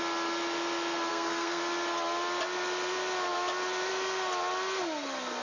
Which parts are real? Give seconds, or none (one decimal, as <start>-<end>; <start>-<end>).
0.0-1.1; 1.6-5.4